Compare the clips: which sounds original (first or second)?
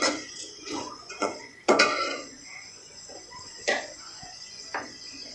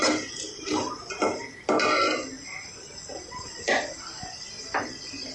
second